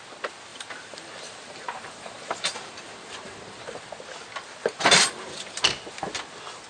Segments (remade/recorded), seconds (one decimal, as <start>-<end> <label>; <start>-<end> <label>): 0.0-0.5 recorded; 0.5-3.9 remade; 3.9-4.6 recorded; 4.6-5.4 remade; 5.4-6.7 recorded